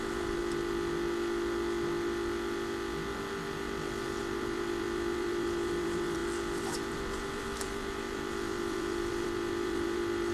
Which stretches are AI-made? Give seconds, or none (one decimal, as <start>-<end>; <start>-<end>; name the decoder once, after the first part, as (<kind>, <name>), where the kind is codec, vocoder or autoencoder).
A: 0.0-0.4 (vocoder, BigVGAN v2); 4.2-6.2; 6.9-10.3